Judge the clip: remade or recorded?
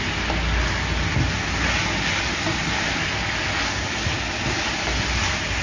recorded